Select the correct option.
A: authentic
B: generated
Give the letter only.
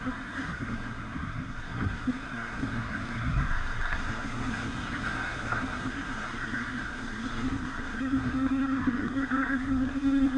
B